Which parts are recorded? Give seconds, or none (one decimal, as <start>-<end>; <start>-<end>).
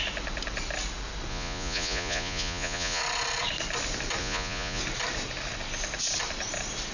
0.0-1.3; 3.0-4.2; 4.8-6.9